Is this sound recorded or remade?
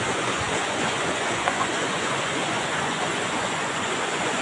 remade